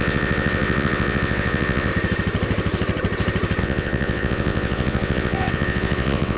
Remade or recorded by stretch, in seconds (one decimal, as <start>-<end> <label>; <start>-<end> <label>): 0.0-1.9 remade; 1.9-3.6 recorded; 3.6-6.4 remade